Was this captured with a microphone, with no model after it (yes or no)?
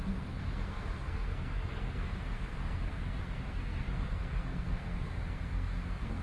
no